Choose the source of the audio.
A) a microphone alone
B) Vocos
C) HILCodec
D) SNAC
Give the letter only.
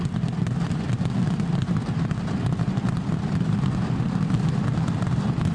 A